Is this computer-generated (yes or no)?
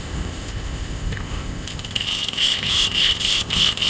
yes